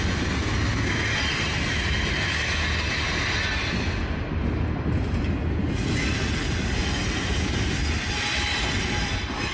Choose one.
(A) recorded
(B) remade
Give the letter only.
A